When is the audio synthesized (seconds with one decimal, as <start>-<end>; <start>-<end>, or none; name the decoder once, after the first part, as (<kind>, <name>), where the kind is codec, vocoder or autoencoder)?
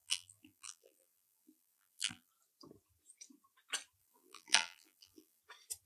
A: 0.0-2.3 (vocoder, BigVGAN v2); 4.0-5.4